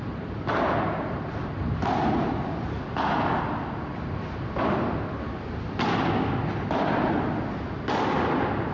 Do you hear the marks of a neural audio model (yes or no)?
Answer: no